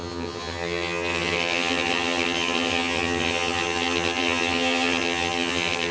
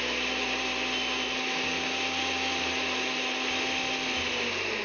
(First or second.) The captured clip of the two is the second